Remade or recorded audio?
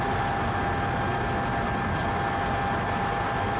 recorded